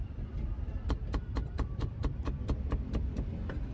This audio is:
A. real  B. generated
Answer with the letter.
A